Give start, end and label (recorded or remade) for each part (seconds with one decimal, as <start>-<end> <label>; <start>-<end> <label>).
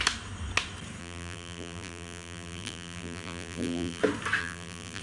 0.0-1.0 recorded; 1.0-4.0 remade; 4.0-4.4 recorded; 4.4-5.0 remade